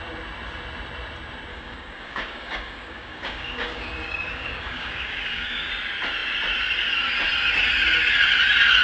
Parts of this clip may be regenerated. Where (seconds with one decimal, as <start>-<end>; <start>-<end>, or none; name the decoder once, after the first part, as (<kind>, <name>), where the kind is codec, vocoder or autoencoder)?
1.5-5.7 (codec, DAC)

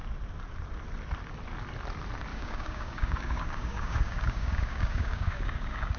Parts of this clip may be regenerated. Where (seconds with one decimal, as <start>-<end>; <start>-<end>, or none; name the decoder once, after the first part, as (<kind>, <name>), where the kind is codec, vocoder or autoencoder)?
2.3-6.0 (codec, DAC)

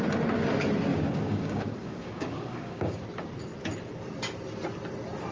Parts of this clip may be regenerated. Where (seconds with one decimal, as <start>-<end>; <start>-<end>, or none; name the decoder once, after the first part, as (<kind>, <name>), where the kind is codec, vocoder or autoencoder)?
0.9-3.0 (codec, DAC)

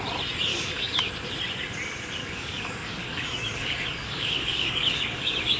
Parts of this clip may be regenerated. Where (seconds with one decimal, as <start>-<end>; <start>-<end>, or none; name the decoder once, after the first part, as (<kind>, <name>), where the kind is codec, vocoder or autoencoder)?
0.5-1.1 (codec, DAC); 2.2-5.6

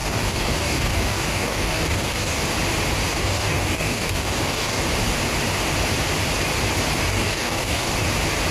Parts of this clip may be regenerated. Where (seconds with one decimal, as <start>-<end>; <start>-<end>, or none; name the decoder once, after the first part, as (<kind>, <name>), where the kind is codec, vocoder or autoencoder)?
0.0-2.4 (codec, DAC); 3.1-4.8; 7.1-7.9

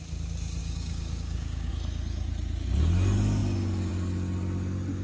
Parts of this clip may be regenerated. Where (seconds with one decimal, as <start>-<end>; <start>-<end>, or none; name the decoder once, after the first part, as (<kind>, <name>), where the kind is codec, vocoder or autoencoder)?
0.6-1.7 (codec, DAC)

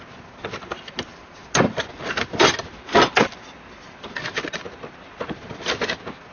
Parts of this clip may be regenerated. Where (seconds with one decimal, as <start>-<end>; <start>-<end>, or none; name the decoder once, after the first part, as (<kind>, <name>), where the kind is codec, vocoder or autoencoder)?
none

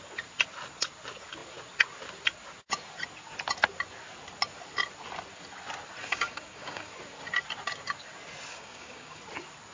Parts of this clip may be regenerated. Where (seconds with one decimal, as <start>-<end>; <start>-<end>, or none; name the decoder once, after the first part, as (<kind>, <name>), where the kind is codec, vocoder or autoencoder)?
6.0-6.9 (codec, DAC); 8.5-9.2